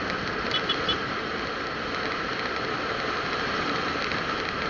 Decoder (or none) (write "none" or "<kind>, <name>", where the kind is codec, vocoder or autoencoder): none